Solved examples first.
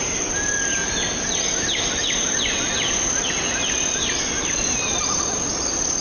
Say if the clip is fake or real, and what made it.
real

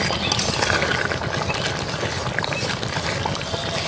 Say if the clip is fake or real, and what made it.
real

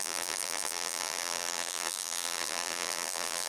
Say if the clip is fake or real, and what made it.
fake, vocoder, BigVGAN v2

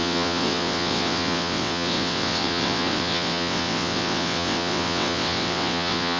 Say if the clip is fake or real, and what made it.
fake, vocoder, WaveNeXt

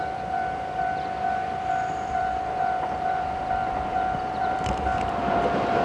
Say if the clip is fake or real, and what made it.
fake, vocoder, BigVGAN v2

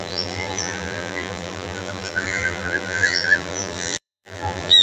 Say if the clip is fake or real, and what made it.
fake, vocoder, BigVGAN v2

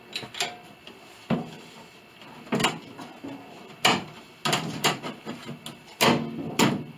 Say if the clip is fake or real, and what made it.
real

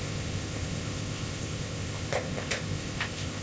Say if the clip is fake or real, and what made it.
fake, codec, ZipCodec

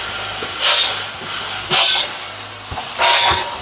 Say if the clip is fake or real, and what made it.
real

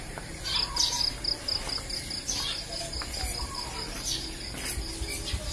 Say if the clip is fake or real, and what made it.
real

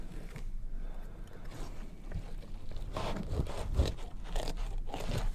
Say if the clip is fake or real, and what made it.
real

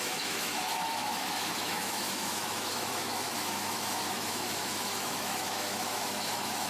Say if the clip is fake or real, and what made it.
fake, autoencoder, DAC-VAE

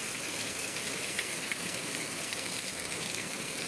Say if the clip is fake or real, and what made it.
fake, codec, SNAC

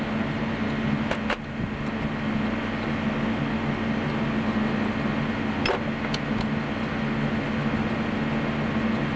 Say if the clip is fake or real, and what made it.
real